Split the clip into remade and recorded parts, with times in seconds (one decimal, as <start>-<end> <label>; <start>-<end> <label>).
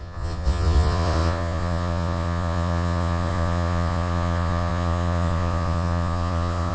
0.0-6.7 remade